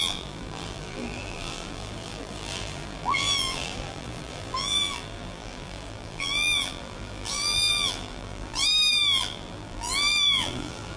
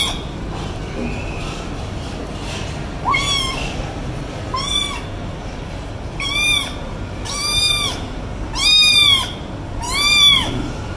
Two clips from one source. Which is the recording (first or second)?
second